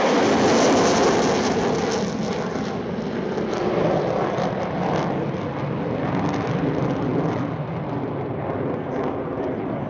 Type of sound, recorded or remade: recorded